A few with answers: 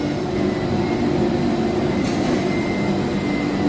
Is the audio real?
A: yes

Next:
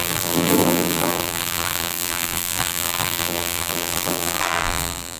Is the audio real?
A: no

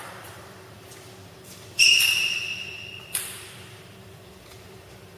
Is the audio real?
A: no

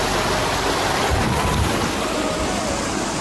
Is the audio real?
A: no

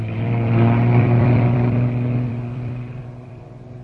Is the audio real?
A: no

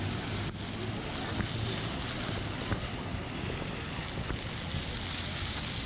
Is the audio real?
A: yes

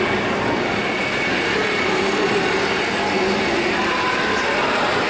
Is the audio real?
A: yes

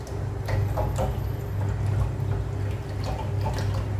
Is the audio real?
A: yes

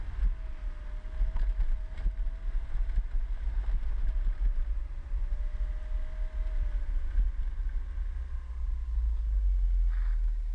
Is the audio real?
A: yes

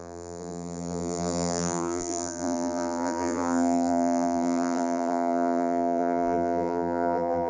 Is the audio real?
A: no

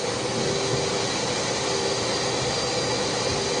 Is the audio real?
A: yes